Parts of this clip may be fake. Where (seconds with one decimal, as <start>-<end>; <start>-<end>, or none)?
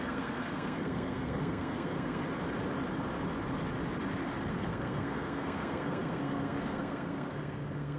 0.0-2.2; 4.5-8.0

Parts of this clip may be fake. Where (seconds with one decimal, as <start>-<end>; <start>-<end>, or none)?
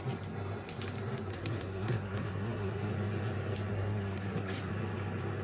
1.3-2.9; 3.7-4.7